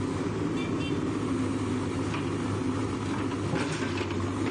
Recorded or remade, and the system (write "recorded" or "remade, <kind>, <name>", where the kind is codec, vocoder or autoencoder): recorded